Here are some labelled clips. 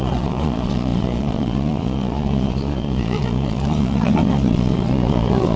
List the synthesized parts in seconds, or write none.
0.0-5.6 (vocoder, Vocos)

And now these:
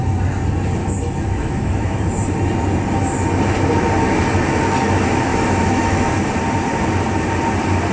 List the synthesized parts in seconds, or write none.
0.8-2.0 (autoencoder, DAC-VAE); 5.3-6.1

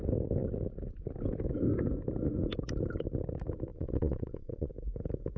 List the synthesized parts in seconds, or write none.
3.7-4.7 (vocoder, Vocos)